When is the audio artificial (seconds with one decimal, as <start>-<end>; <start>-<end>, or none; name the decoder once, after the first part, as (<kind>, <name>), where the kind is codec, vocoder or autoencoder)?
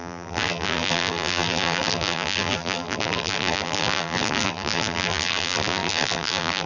0.0-6.7 (vocoder, BigVGAN v2)